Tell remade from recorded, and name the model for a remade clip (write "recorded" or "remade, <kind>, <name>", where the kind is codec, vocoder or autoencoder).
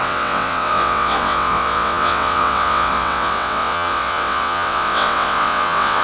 remade, vocoder, WaveNeXt